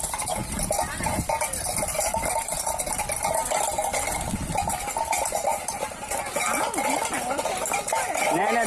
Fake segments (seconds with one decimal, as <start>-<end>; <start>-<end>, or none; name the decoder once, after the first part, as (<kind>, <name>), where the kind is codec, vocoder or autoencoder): none